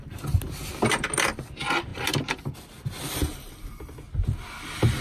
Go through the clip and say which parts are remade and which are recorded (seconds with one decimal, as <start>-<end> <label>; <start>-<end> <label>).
0.0-5.0 recorded